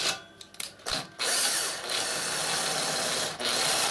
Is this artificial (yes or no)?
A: no